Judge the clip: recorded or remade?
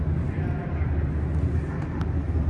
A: recorded